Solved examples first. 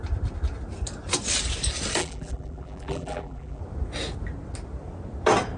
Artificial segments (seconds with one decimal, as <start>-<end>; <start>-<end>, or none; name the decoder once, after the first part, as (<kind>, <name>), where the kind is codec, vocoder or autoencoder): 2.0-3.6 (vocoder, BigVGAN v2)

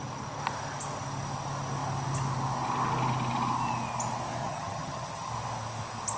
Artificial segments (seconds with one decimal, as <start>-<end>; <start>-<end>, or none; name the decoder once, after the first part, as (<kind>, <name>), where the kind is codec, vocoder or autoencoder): 4.4-5.3 (vocoder, HiFi-GAN)

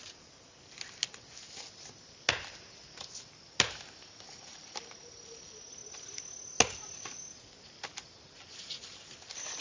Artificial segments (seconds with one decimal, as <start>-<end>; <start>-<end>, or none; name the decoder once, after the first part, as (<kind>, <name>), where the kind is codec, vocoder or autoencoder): none

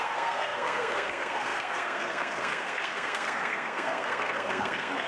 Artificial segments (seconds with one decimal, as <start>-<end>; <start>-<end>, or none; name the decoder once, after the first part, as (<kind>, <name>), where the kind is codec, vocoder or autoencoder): 0.0-5.1 (codec, SNAC)